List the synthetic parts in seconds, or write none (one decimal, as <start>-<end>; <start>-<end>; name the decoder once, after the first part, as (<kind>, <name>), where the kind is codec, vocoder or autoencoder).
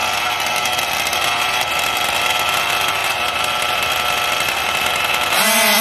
2.2-5.8 (vocoder, BigVGAN v2)